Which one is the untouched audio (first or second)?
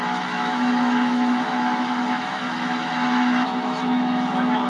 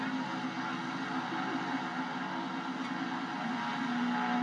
second